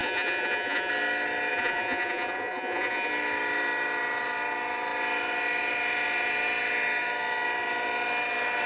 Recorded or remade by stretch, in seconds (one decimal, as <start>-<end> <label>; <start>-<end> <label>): 0.0-0.9 remade; 0.9-1.5 recorded; 1.5-3.1 remade; 3.1-8.7 recorded